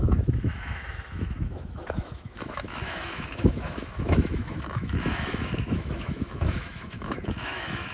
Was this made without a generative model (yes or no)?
no